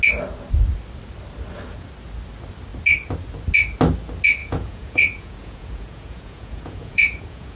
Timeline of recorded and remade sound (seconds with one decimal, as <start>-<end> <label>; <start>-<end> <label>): 0.0-4.4 recorded; 4.4-7.6 remade